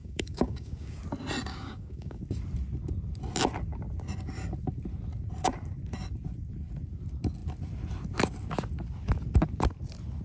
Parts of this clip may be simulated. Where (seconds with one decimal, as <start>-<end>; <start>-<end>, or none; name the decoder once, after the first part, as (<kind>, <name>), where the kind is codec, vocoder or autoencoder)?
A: 0.0-1.0 (codec, DAC); 1.5-2.2